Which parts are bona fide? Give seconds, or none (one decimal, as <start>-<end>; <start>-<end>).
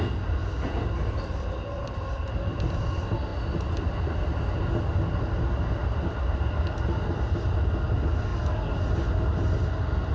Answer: 0.0-10.1